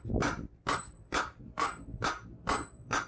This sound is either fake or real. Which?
fake